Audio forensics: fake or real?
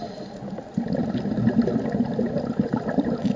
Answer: real